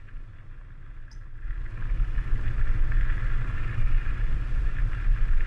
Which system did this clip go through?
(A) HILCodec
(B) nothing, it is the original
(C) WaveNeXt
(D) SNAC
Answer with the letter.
B